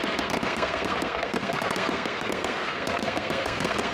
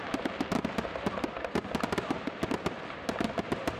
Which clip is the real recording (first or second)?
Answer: second